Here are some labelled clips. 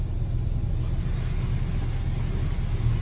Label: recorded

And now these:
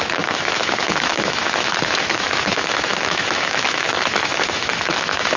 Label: remade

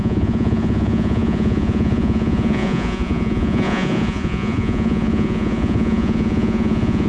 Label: remade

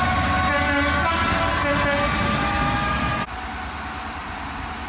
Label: recorded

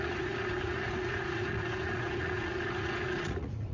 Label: remade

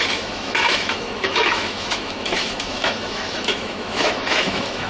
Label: remade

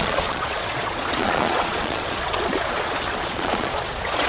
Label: remade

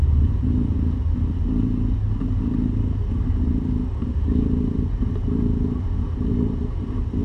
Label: recorded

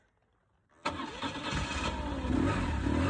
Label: recorded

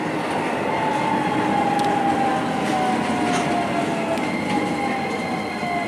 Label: recorded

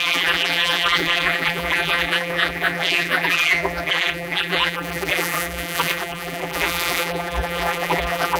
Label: remade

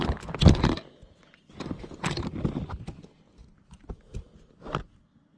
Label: recorded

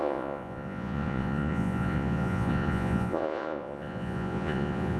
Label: remade